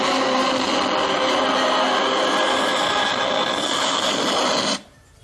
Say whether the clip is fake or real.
real